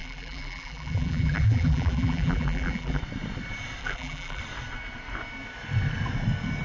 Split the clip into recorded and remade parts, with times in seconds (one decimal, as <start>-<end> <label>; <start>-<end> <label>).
0.0-3.0 remade; 3.0-3.8 recorded; 3.8-4.4 remade; 4.4-6.6 recorded